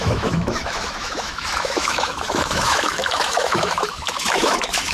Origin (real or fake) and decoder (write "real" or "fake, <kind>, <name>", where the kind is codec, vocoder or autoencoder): fake, autoencoder, DAC-VAE